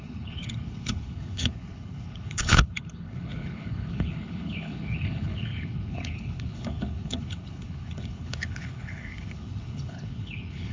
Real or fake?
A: fake